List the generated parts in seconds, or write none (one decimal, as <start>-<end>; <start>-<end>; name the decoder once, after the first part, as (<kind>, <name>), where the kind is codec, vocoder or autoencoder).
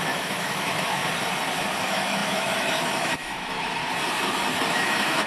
0.0-1.0 (autoencoder, DAC-VAE); 1.8-3.8; 4.7-5.3